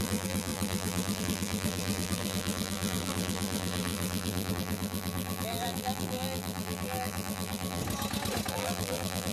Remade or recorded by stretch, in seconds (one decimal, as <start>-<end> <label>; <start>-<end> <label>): 0.0-7.8 remade; 7.8-8.5 recorded; 8.5-9.3 remade